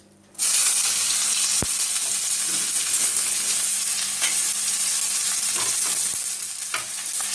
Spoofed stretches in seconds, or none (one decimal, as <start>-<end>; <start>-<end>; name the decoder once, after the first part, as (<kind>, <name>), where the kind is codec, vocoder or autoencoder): 2.9-3.6 (codec, HILCodec)